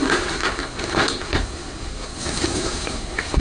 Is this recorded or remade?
remade